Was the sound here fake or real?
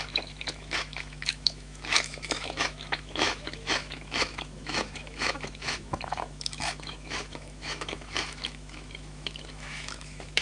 fake